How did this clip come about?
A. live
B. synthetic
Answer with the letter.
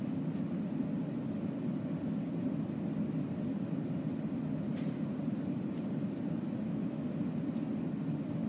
A